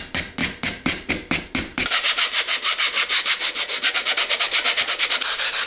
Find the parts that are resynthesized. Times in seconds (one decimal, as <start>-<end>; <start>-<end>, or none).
0.4-1.1; 1.7-5.1